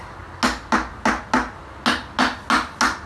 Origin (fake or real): real